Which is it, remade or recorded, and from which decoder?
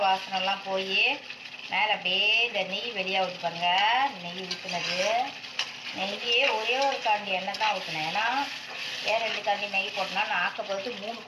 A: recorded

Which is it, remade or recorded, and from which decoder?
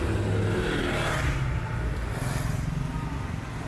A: recorded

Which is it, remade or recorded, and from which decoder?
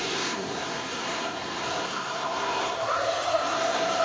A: remade, codec, SNAC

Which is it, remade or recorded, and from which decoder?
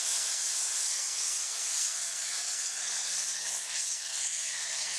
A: remade, codec, SNAC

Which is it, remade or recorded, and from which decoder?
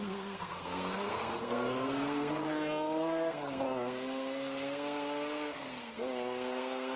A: remade, codec, SNAC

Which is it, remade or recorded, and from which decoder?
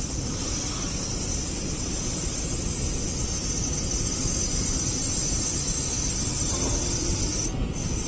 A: recorded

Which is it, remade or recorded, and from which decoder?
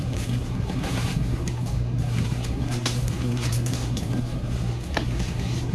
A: remade, codec, SNAC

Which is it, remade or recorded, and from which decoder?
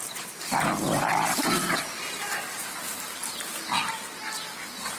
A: recorded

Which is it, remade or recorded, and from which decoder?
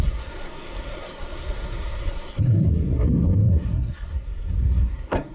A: remade, codec, SNAC